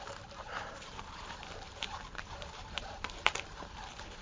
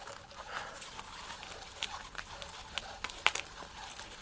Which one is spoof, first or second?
first